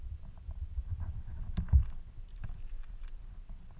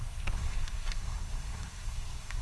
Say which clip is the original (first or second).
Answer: first